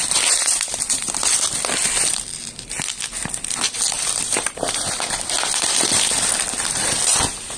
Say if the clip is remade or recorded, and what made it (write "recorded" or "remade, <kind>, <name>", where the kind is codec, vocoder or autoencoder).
remade, vocoder, BigVGAN v2